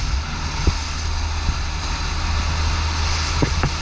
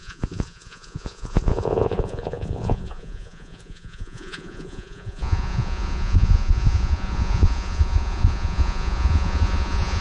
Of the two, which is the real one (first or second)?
first